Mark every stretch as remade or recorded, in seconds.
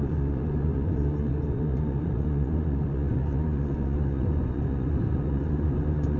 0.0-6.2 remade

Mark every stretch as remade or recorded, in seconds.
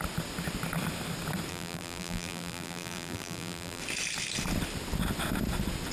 0.0-1.5 recorded; 1.5-3.8 remade; 3.8-5.9 recorded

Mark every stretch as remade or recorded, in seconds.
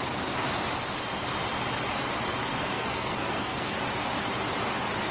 0.0-2.5 recorded; 2.5-3.8 remade; 3.8-5.1 recorded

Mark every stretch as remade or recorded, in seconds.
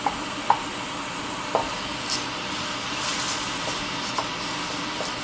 0.0-5.2 recorded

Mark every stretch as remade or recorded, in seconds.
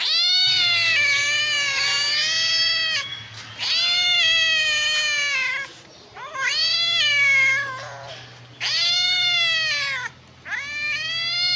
0.0-11.6 recorded